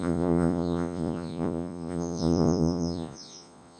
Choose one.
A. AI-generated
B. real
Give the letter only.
A